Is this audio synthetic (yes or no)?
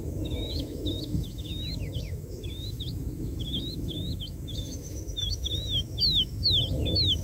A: yes